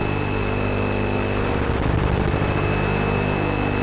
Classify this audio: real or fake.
real